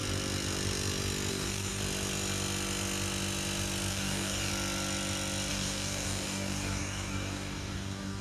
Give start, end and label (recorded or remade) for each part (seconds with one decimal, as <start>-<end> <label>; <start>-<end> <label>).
0.0-1.3 recorded; 1.3-1.8 remade; 1.8-3.9 recorded; 3.9-4.5 remade; 4.5-5.5 recorded; 5.5-8.2 remade

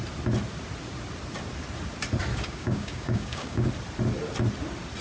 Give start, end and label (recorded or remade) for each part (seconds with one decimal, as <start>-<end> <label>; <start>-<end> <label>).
0.0-2.3 recorded; 2.3-3.7 remade; 3.7-5.0 recorded

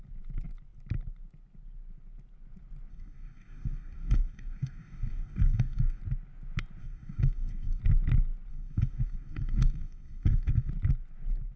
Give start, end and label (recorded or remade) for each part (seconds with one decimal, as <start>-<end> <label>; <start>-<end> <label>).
0.0-2.9 recorded; 2.9-6.0 remade; 6.0-6.8 recorded; 6.8-7.8 remade; 7.8-8.5 recorded; 8.5-10.7 remade; 10.7-11.6 recorded

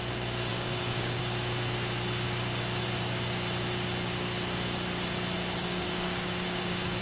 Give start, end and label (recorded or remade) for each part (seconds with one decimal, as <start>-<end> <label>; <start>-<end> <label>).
0.0-0.5 recorded; 0.5-1.2 remade; 1.2-5.6 recorded; 5.6-7.0 remade

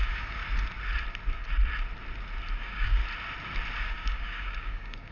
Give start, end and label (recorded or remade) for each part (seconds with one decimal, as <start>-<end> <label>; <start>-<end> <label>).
0.0-0.4 remade; 0.4-2.6 recorded; 2.6-3.0 remade; 3.0-3.8 recorded; 3.8-5.1 remade

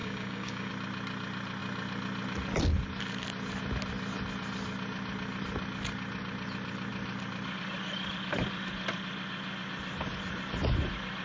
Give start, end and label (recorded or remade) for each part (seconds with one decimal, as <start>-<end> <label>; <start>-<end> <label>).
0.0-0.7 remade; 0.7-11.2 recorded